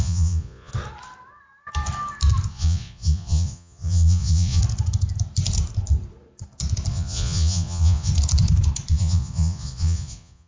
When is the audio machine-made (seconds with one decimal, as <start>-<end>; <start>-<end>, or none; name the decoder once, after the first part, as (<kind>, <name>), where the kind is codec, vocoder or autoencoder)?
0.0-0.7 (vocoder, Vocos); 2.5-4.6; 6.9-8.1; 8.9-10.5